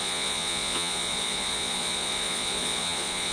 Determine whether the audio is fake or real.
fake